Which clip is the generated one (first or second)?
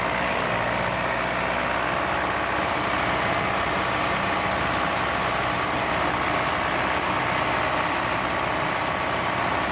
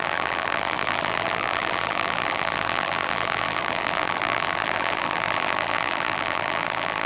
second